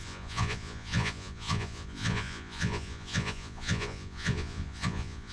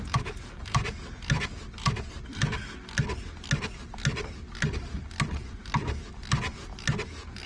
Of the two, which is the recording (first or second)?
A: second